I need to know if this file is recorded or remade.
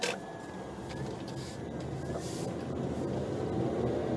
recorded